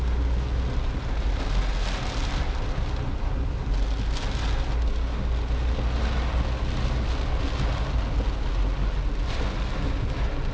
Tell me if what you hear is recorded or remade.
recorded